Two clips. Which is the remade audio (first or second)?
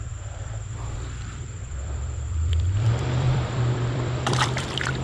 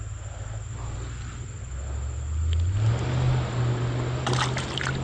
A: first